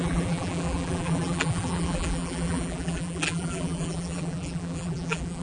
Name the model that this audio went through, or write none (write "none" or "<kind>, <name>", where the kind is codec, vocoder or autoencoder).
vocoder, BigVGAN v2